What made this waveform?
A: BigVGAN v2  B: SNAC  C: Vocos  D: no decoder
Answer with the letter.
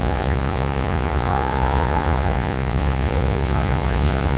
C